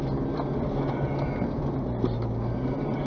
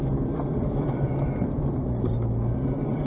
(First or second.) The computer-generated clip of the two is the second